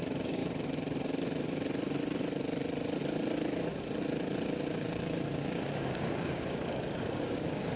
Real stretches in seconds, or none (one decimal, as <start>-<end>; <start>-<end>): 0.4-4.7